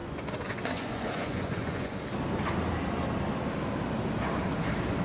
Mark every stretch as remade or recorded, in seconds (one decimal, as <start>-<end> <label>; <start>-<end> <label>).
0.0-2.0 remade; 2.0-5.0 recorded